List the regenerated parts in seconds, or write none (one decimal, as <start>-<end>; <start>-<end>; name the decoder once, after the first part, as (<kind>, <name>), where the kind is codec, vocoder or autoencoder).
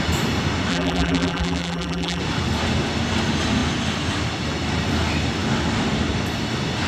0.7-2.2 (vocoder, BigVGAN v2)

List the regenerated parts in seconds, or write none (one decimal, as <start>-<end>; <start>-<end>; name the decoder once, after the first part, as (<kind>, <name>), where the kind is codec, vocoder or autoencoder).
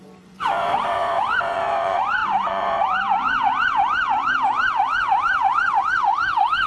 0.0-6.7 (vocoder, Vocos)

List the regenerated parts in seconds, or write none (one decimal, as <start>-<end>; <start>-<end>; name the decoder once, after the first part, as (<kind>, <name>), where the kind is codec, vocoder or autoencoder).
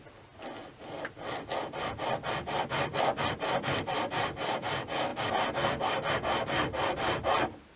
none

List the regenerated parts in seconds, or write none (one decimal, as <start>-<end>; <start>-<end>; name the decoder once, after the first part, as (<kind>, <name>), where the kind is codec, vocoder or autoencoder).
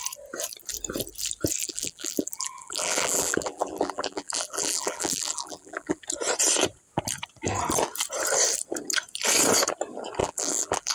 1.6-6.0 (vocoder, BigVGAN v2); 10.2-10.9